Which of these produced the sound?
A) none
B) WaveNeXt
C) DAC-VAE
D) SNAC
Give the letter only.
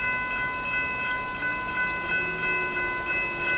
A